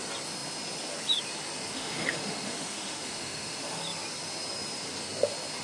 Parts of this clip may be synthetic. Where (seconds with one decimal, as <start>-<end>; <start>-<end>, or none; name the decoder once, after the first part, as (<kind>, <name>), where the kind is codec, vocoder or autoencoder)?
1.7-3.8 (autoencoder, DAC-VAE)